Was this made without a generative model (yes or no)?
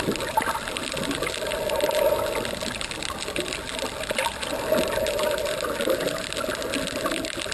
yes